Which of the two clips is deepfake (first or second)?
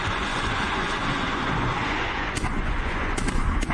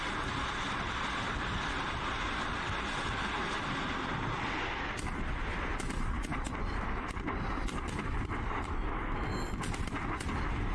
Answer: first